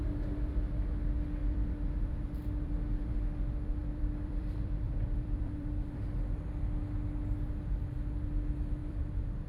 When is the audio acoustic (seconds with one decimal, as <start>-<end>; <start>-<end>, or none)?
0.0-1.4; 2.7-3.8; 5.9-8.8